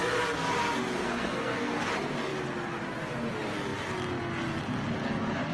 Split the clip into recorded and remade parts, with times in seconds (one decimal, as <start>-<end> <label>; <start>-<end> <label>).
0.0-0.6 recorded; 0.6-1.9 remade; 1.9-5.5 recorded